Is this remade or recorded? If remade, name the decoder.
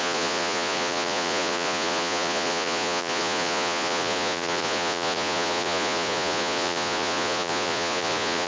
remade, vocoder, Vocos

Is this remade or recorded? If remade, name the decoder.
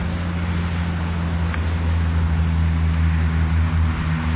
recorded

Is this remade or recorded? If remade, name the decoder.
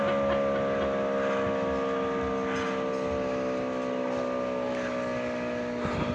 recorded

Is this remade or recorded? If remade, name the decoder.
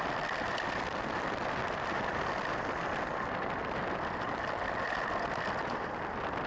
recorded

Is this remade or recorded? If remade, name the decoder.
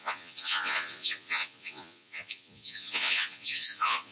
remade, vocoder, Vocos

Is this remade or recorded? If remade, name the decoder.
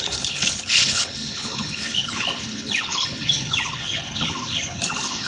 remade, codec, HILCodec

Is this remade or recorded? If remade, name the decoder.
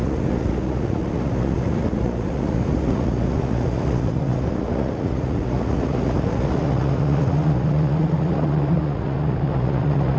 remade, vocoder, Vocos